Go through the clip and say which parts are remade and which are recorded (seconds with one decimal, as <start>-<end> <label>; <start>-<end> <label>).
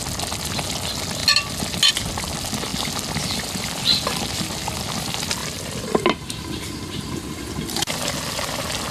0.0-8.9 recorded